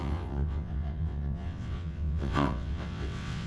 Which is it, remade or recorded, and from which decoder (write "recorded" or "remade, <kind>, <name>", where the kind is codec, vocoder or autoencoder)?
remade, vocoder, WaveNeXt